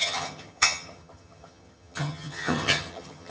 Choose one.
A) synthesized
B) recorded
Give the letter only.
A